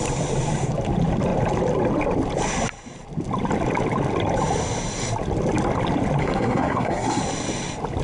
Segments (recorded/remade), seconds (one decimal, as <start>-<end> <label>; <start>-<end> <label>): 0.0-6.2 recorded; 6.2-7.2 remade; 7.2-8.0 recorded